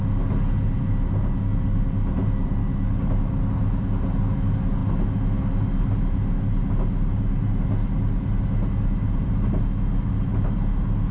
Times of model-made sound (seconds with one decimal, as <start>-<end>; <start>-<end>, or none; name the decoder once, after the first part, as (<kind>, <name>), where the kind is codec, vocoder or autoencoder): none